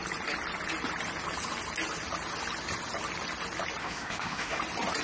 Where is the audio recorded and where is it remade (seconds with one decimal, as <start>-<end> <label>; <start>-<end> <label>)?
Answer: 0.0-3.8 recorded; 3.8-4.6 remade; 4.6-5.0 recorded